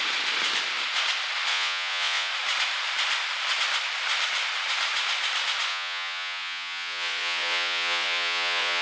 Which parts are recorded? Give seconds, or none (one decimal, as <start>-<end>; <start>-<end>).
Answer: 0.0-1.5; 2.3-5.7